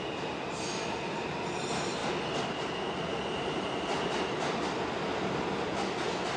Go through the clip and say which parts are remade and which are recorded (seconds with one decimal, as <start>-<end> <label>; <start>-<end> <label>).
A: 0.0-6.4 recorded